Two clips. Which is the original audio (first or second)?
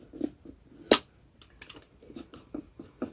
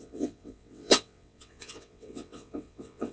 first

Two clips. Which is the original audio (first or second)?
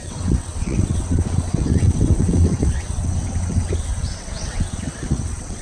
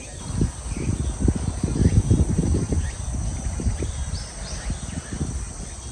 second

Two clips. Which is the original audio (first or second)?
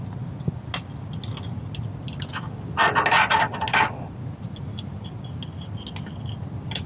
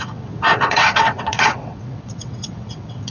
first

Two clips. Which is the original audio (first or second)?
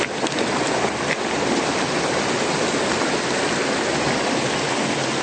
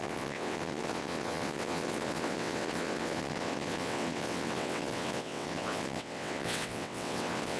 first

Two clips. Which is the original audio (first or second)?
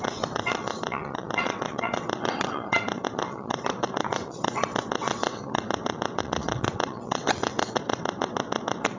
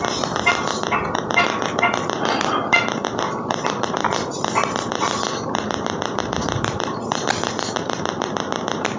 second